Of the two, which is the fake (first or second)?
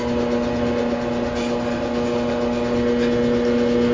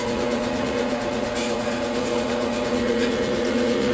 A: second